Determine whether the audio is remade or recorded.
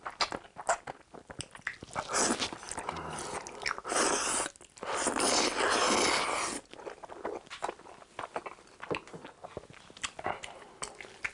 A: recorded